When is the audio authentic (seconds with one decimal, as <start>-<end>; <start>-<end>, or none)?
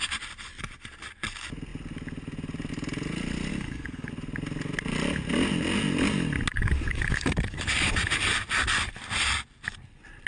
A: 0.0-3.5; 4.1-6.5; 7.9-10.3